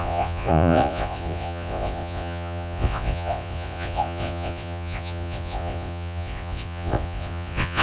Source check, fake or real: fake